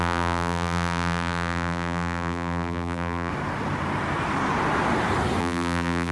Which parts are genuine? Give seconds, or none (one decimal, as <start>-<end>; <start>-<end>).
3.3-5.4